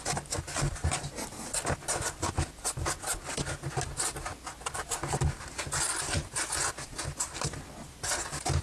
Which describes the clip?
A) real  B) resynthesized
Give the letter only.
A